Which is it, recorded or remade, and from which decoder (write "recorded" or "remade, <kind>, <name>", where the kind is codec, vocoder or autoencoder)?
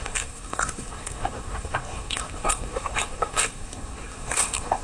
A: remade, codec, SNAC